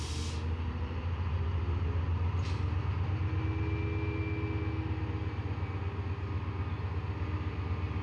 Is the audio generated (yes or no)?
no